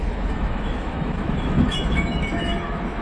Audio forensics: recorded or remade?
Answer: remade